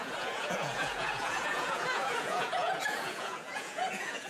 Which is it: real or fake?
fake